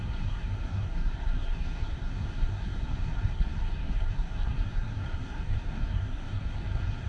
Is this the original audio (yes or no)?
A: no